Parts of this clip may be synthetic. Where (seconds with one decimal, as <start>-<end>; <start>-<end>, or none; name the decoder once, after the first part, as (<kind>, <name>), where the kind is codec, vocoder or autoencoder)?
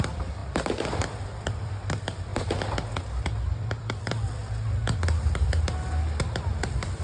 0.0-2.3 (vocoder, BigVGAN v2); 3.6-4.4; 6.5-7.0